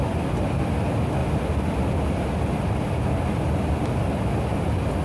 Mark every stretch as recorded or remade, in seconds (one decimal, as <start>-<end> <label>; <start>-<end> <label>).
0.0-5.0 recorded